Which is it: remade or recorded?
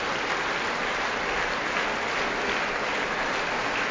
recorded